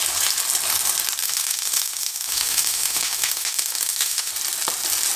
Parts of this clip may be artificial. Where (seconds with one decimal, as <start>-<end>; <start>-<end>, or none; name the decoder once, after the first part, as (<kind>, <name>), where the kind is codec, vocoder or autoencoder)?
1.2-4.3 (autoencoder, DAC-VAE)